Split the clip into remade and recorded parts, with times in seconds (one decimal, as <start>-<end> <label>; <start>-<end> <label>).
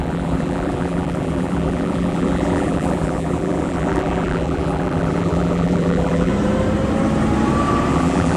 0.0-6.3 remade; 6.3-7.9 recorded; 7.9-8.4 remade